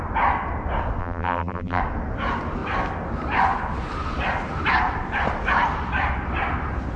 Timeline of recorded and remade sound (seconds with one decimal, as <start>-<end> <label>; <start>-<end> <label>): 0.0-1.0 recorded; 1.0-1.8 remade; 1.8-7.0 recorded